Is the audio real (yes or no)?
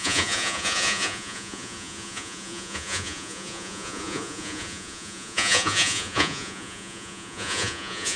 no